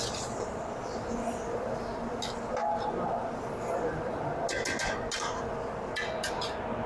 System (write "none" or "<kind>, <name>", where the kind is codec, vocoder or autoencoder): none